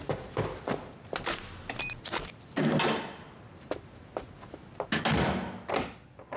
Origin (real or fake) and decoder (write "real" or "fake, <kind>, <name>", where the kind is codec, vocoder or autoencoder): real